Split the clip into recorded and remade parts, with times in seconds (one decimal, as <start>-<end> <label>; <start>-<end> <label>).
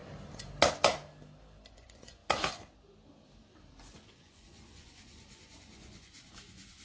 0.0-1.7 recorded; 1.7-2.2 remade; 2.2-3.8 recorded; 3.8-6.8 remade